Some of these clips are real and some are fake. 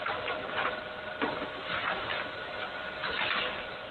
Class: real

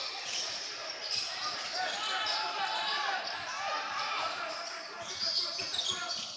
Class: real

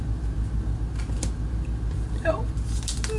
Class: real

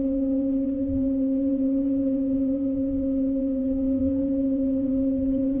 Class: fake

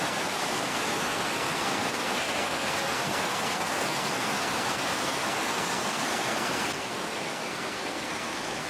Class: fake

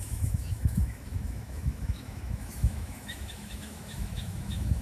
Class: fake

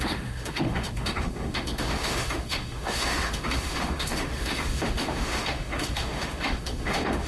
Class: fake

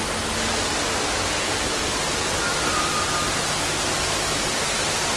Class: real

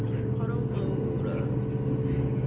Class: real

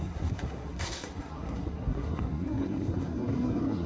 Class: fake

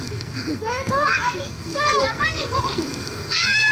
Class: fake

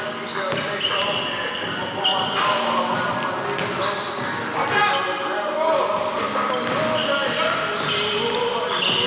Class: real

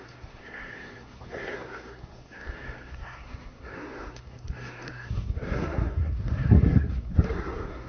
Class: fake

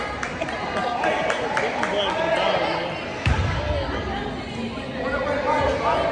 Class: real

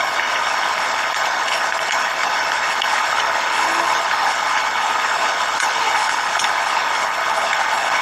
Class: fake